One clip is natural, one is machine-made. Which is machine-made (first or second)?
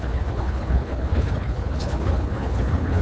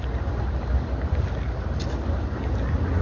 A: first